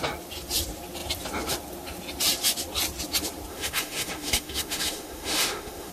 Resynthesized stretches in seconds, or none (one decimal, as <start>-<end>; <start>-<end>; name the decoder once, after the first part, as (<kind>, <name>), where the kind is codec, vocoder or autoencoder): 3.5-5.9 (autoencoder, DAC-VAE)